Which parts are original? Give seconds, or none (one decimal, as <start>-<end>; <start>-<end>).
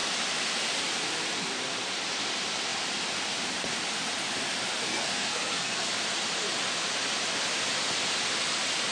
0.0-4.9; 5.9-8.9